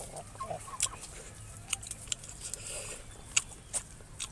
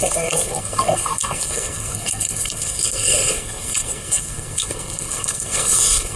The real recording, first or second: first